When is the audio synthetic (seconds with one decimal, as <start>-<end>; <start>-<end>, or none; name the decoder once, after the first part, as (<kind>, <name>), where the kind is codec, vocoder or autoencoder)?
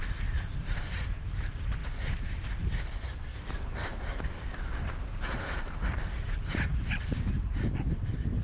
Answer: 0.0-8.4 (vocoder, BigVGAN v2)